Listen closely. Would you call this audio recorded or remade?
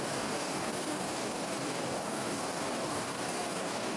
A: remade